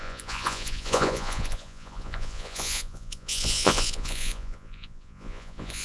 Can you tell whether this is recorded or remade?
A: remade